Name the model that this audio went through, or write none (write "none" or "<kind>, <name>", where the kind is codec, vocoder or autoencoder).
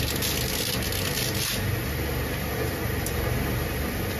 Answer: none